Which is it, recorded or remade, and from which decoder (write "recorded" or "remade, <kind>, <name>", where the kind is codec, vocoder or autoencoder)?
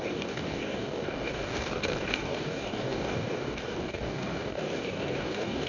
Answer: remade, codec, DAC